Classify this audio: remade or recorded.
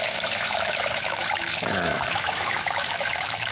remade